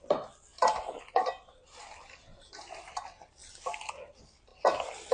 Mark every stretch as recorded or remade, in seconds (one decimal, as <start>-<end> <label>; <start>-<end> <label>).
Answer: 0.0-0.5 recorded; 0.5-2.9 remade; 2.9-5.1 recorded